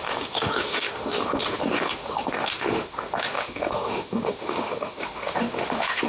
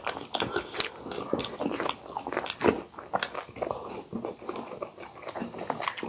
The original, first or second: second